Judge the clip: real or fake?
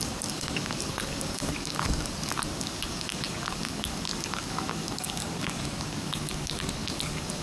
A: fake